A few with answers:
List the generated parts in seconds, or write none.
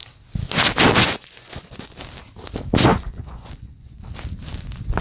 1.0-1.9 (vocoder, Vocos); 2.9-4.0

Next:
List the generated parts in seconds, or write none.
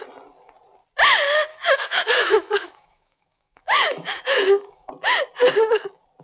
1.5-4.9 (autoencoder, DAC-VAE)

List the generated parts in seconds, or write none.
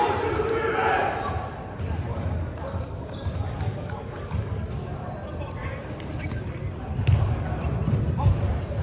2.1-4.7 (codec, DAC); 5.6-6.4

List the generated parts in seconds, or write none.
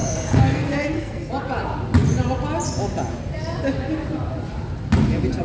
0.0-1.3 (codec, SNAC)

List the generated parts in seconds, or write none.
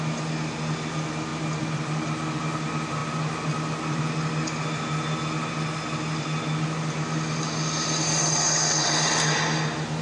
0.0-1.3 (vocoder, BigVGAN v2); 2.4-10.0